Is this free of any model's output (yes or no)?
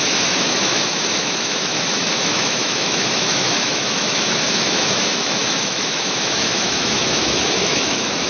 no